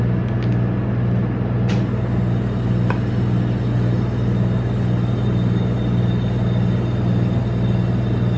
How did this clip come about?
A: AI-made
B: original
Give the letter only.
B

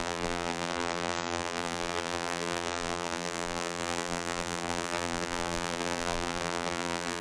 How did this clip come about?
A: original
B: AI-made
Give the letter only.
B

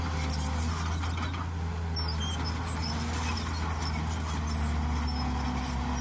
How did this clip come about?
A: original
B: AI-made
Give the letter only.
A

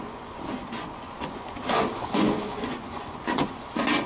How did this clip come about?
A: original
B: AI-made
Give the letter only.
B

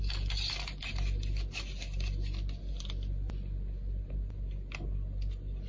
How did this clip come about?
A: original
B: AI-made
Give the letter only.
A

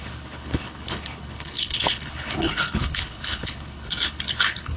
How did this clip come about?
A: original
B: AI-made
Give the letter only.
B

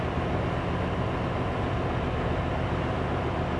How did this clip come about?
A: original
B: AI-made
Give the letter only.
A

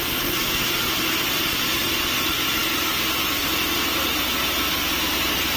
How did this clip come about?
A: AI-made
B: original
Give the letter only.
B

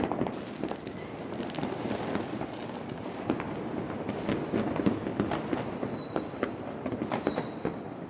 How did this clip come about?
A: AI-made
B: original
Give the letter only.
A